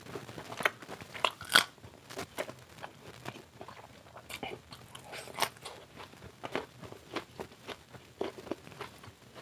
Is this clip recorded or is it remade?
recorded